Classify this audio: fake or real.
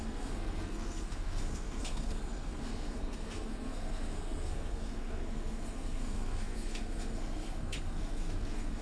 fake